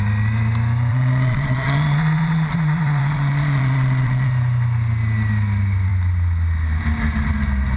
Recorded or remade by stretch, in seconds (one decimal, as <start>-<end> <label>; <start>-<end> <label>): 0.0-0.9 recorded; 0.9-4.3 remade; 4.3-7.8 recorded